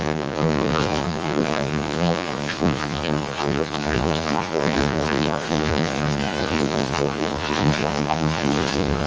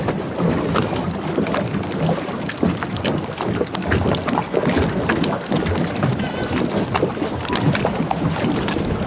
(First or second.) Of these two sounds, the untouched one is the second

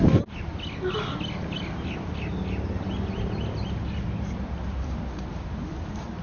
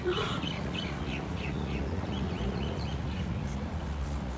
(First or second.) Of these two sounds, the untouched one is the first